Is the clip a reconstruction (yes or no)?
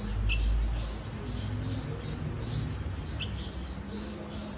no